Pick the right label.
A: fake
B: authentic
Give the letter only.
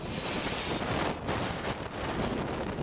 B